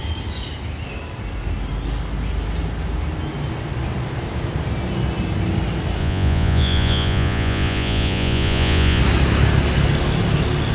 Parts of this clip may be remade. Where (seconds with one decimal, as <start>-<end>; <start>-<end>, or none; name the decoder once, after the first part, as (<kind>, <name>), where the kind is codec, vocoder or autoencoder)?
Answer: 6.0-9.0 (vocoder, Vocos)